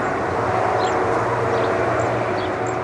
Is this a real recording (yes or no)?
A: yes